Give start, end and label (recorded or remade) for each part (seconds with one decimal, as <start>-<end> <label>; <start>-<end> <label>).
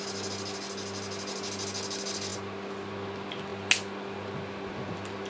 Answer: 0.0-5.3 recorded